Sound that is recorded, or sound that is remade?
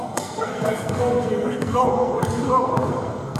remade